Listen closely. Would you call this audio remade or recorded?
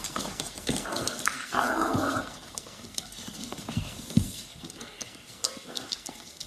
remade